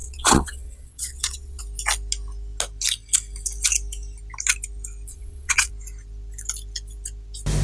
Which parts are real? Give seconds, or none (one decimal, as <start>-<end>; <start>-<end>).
1.6-5.1; 5.7-7.6

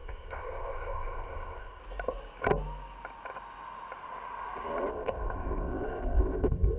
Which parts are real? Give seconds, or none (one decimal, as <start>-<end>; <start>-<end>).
1.8-4.9